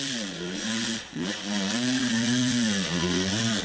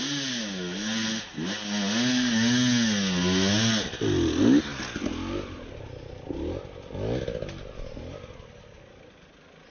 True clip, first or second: second